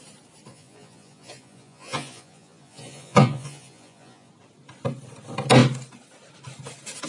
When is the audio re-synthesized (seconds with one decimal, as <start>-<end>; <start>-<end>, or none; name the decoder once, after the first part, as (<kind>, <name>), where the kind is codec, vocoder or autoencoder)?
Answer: 0.5-4.3 (vocoder, Vocos)